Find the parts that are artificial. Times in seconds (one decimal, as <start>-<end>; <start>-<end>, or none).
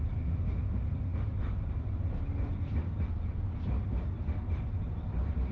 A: none